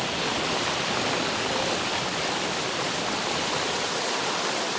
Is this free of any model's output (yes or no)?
yes